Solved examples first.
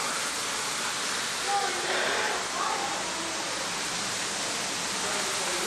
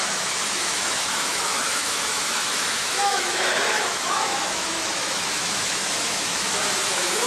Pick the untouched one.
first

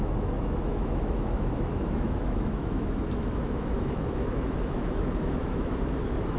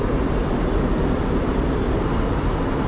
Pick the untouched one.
second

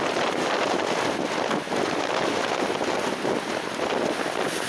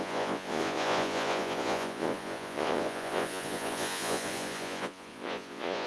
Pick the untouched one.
first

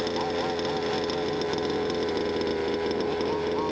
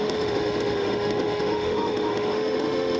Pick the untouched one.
first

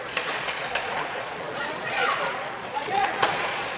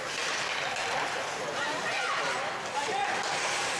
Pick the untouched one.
second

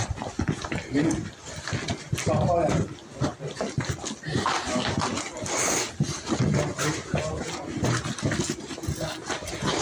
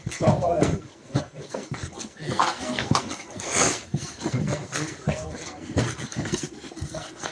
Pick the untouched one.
first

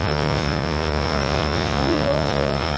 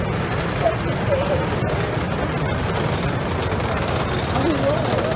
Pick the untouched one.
second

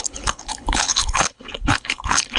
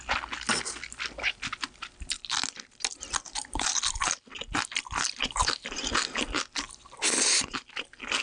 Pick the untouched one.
second